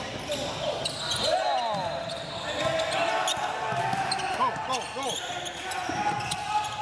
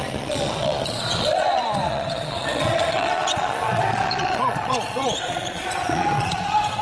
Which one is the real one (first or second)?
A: first